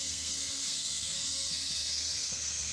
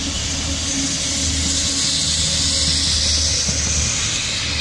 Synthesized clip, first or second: first